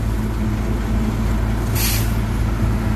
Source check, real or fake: real